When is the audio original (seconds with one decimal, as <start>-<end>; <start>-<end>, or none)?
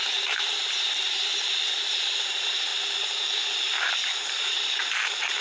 1.3-1.9